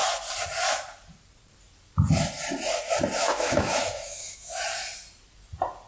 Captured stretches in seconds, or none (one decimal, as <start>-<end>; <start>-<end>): 0.0-3.2; 4.6-5.9